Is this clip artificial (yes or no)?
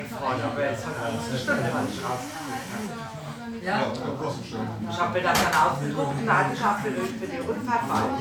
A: no